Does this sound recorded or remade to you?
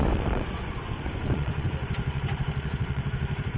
remade